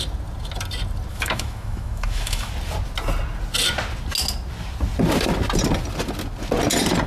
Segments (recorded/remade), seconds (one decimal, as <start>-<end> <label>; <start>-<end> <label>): 0.0-1.1 recorded; 1.1-2.5 remade; 2.5-7.1 recorded